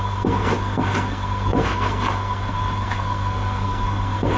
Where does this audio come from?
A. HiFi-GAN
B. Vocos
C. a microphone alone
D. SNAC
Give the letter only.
D